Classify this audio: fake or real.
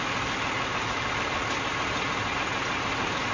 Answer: real